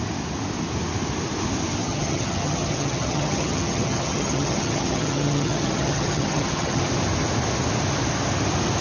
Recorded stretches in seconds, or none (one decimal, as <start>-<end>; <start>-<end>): 0.0-1.8; 6.8-8.8